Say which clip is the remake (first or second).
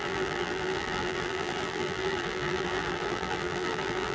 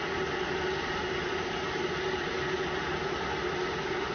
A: first